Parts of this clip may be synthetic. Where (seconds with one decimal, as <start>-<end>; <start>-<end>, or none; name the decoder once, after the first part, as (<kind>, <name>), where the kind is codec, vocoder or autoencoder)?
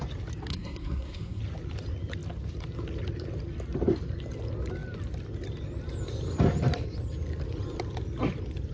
0.5-1.4 (codec, SNAC)